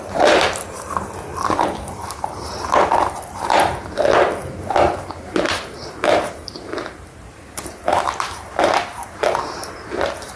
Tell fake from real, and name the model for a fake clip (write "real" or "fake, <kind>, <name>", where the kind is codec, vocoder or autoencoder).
fake, vocoder, BigVGAN v2